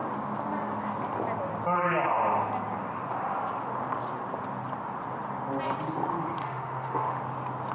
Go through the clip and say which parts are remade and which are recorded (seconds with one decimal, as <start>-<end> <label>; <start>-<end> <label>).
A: 0.0-6.4 recorded; 6.4-7.2 remade; 7.2-7.7 recorded